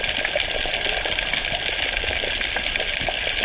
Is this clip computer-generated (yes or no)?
no